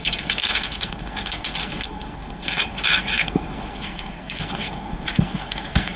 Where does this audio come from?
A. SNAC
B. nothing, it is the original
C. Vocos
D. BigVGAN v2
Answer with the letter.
A